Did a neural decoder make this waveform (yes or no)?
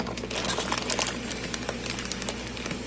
no